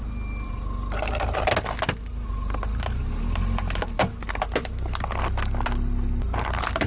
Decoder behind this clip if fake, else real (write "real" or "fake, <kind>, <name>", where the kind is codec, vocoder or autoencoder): real